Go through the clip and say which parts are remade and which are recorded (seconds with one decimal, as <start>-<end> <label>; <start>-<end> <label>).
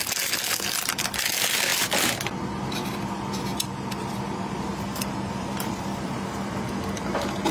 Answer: 0.0-1.7 recorded; 1.7-2.4 remade; 2.4-3.5 recorded; 3.5-6.7 remade; 6.7-7.5 recorded